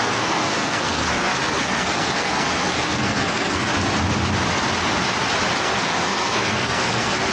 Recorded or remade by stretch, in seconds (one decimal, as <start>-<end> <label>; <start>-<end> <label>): 0.0-3.7 remade; 3.7-5.6 recorded; 5.6-7.3 remade